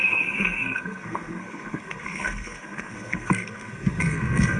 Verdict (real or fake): fake